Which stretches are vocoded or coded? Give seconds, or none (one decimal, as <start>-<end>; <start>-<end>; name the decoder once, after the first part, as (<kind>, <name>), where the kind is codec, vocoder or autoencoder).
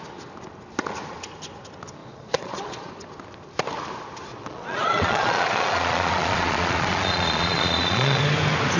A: 2.0-2.9 (vocoder, Vocos); 4.3-8.2